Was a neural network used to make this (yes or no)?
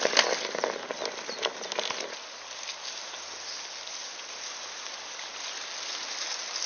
no